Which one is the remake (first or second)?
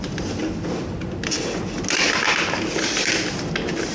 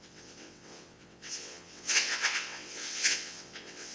second